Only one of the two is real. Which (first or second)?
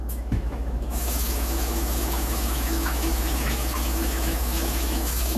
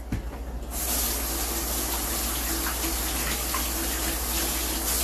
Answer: second